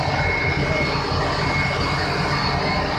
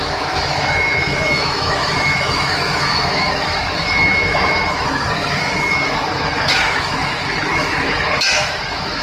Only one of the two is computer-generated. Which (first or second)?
second